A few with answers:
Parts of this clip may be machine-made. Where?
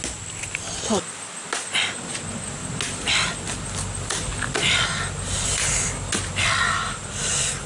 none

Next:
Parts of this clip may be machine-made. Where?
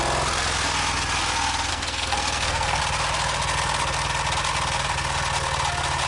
1.7-2.8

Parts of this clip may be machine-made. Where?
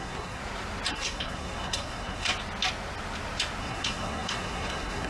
0.0-0.4; 0.9-2.3; 3.6-5.1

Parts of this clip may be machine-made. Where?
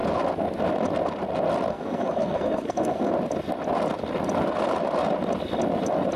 1.7-3.1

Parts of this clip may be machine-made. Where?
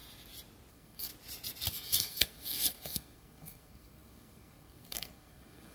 0.7-1.1; 1.7-5.7